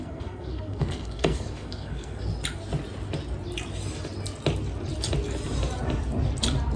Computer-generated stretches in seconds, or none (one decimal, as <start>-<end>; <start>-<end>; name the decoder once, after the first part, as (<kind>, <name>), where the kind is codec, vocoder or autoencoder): 0.0-2.3 (codec, SNAC)